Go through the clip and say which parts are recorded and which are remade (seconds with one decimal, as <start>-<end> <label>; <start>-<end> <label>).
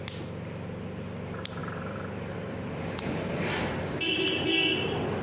0.0-1.6 recorded; 1.6-3.5 remade; 3.5-5.2 recorded